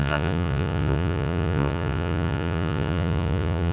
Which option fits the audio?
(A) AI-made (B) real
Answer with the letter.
A